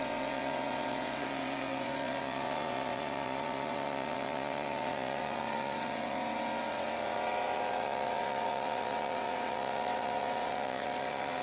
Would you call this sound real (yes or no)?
no